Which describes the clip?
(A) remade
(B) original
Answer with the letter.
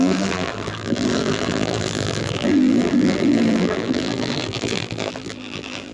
A